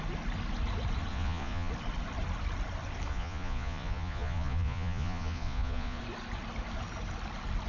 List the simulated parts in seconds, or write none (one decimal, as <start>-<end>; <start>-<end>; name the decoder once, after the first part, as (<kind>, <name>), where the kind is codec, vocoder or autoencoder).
1.1-1.7 (vocoder, Vocos); 3.1-6.0